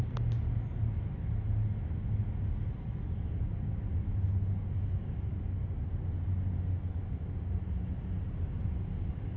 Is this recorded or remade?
recorded